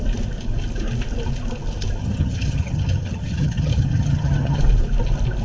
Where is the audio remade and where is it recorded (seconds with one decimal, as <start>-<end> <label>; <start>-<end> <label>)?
0.0-2.0 recorded; 2.0-4.6 remade; 4.6-5.4 recorded